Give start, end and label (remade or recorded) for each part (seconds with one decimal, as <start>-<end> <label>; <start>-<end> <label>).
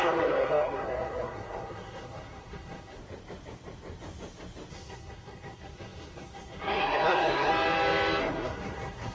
0.0-3.0 remade; 3.0-4.7 recorded; 4.7-7.5 remade; 7.5-8.2 recorded; 8.2-9.1 remade